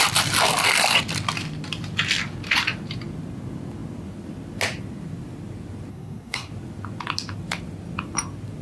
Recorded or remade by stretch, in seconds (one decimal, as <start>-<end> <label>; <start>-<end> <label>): 0.0-5.9 recorded; 5.9-6.5 remade; 6.5-8.6 recorded

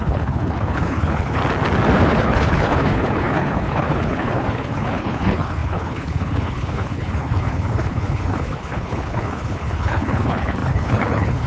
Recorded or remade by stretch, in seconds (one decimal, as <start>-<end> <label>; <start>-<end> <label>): 0.0-1.4 remade; 1.4-2.1 recorded; 2.1-11.5 remade

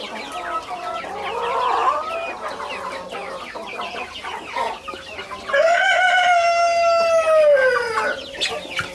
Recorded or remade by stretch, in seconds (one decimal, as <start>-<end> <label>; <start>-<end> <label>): 0.0-8.9 recorded